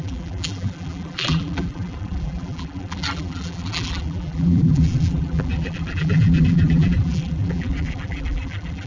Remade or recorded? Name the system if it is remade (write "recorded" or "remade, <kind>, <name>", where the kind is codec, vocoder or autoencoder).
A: remade, vocoder, BigVGAN v2